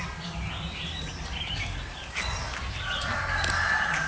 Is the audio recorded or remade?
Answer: recorded